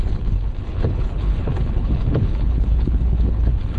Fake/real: fake